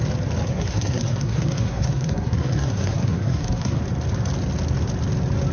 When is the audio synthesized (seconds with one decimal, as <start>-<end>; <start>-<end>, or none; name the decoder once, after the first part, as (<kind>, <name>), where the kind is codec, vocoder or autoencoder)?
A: 0.5-3.8 (codec, SNAC)